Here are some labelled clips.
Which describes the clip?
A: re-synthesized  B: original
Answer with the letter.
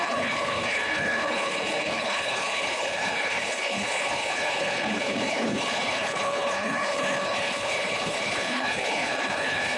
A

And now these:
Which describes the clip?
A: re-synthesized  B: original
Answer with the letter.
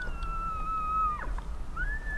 B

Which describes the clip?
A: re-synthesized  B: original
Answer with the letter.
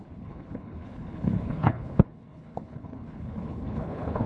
A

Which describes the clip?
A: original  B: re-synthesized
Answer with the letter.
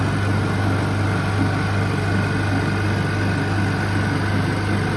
A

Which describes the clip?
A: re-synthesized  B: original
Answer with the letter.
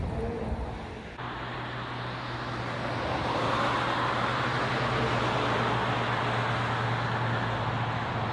B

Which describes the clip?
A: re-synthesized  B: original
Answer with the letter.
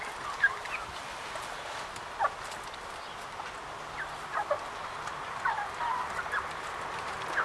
B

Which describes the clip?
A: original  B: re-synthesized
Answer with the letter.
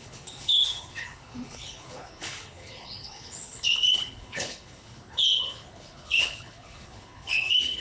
B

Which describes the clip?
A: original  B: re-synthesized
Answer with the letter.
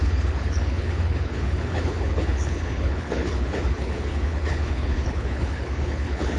B